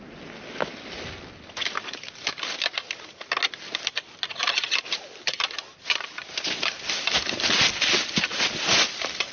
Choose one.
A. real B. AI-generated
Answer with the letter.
A